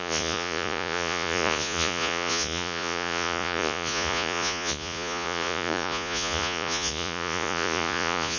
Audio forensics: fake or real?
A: fake